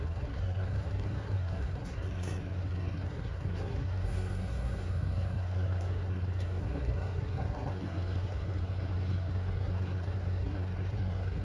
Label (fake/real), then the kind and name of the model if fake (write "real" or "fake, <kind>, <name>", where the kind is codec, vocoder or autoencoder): fake, codec, SNAC